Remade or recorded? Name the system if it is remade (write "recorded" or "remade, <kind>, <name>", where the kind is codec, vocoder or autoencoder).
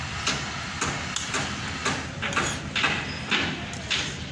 recorded